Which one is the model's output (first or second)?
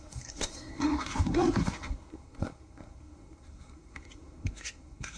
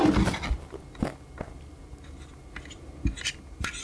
first